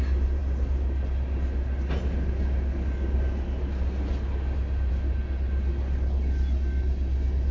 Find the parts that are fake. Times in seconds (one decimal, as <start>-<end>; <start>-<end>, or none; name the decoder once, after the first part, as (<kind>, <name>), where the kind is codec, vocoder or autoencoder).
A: none